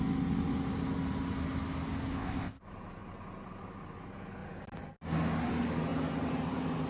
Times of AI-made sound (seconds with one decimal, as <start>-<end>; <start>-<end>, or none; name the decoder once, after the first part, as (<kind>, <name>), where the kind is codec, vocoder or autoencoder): 2.1-2.6 (codec, ZipCodec)